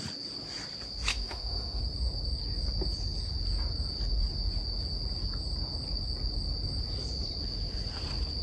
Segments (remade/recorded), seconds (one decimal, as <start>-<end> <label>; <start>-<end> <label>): 0.0-1.1 recorded; 1.1-1.8 remade; 1.8-8.4 recorded